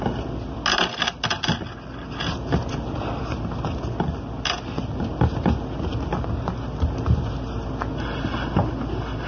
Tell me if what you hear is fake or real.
real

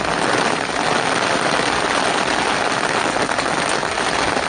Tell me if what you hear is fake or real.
real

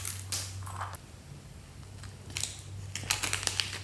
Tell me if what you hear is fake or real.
real